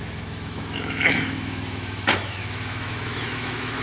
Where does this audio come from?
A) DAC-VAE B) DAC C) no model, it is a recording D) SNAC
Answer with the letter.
A